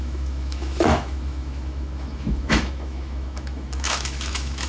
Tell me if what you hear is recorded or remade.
remade